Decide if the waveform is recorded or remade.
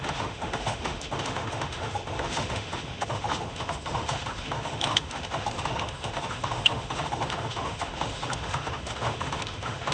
remade